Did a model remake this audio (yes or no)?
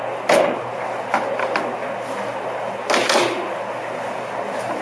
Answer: no